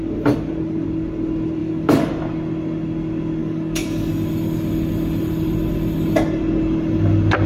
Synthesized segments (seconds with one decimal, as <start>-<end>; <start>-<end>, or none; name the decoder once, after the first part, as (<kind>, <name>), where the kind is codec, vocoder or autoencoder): 1.6-2.1 (codec, DAC); 3.4-4.1